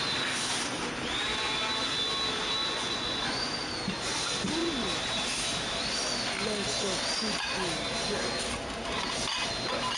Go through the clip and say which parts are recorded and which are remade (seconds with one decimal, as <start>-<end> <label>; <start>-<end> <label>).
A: 0.0-2.6 recorded; 2.6-3.5 remade; 3.5-10.0 recorded